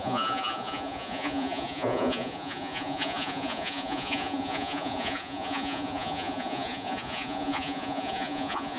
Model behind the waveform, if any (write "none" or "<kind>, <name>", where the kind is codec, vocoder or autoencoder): vocoder, Vocos